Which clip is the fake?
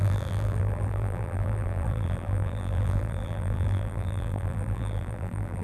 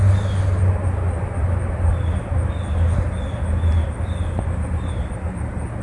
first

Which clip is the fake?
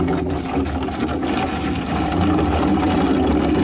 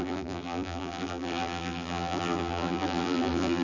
second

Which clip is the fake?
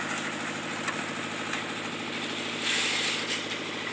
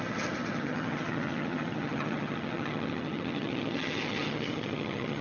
second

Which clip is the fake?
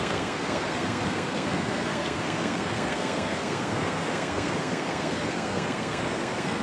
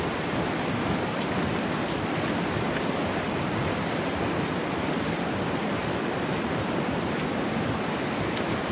first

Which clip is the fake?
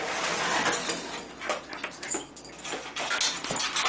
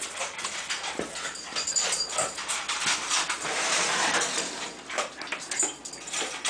second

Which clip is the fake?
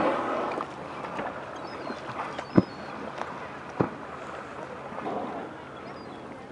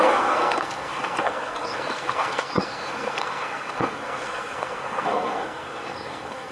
second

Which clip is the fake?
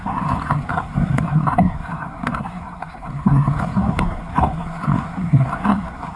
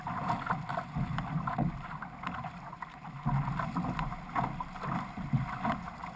first